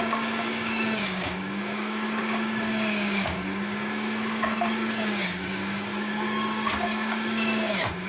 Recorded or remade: remade